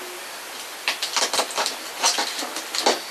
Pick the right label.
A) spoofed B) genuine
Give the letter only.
B